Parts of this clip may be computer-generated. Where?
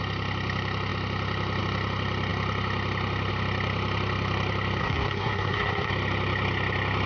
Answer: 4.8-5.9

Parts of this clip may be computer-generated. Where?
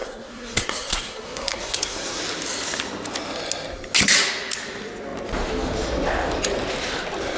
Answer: 0.0-2.2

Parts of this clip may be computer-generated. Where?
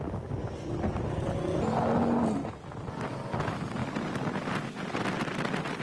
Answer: none